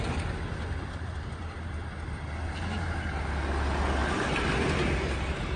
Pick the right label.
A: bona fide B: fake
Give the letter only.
A